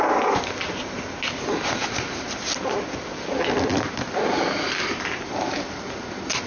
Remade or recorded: recorded